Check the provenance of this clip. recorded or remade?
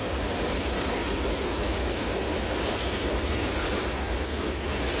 recorded